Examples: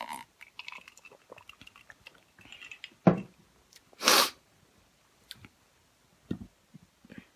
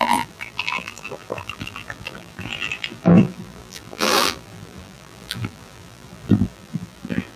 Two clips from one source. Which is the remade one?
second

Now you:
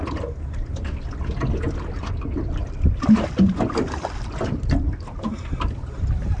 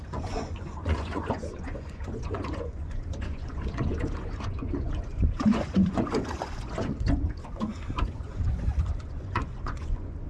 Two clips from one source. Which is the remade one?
second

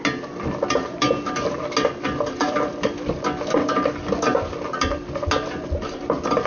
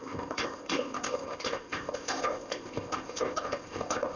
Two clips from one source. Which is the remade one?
second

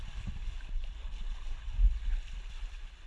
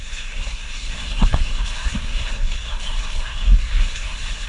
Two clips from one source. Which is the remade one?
second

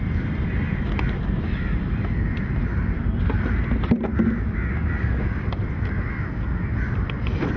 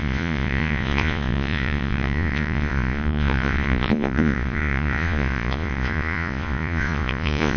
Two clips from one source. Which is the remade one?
second